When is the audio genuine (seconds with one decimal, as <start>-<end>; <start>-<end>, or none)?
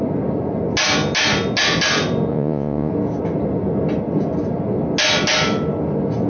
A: 0.0-2.3; 2.9-6.3